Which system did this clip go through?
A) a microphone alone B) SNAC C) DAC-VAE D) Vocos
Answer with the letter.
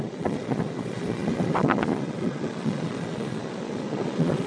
D